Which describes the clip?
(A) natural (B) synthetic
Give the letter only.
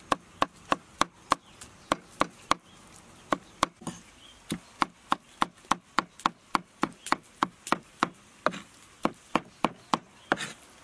A